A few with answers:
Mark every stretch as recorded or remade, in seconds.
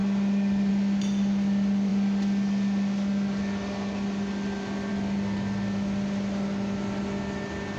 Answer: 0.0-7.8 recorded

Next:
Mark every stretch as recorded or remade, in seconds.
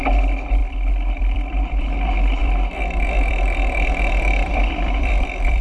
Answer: 0.0-0.6 recorded; 0.6-1.8 remade; 1.8-2.4 recorded; 2.4-5.6 remade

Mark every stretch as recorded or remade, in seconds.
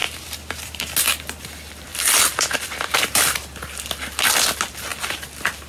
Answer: 0.0-0.8 remade; 0.8-1.9 recorded; 1.9-3.0 remade; 3.0-5.7 recorded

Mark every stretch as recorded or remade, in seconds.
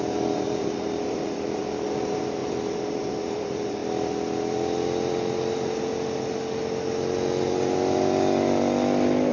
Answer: 0.0-3.8 remade; 3.8-9.3 recorded